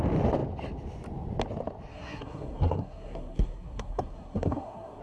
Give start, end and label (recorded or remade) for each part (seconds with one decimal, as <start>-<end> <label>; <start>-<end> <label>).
0.0-1.9 recorded; 1.9-5.0 remade